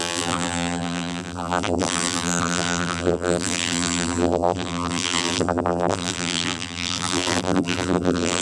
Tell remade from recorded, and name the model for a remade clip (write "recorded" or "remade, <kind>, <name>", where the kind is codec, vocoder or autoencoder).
remade, vocoder, BigVGAN v2